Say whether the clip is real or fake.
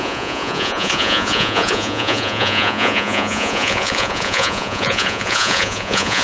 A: fake